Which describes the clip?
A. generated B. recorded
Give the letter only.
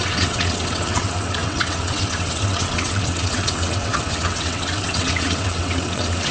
A